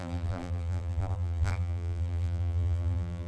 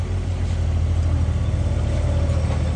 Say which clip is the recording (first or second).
second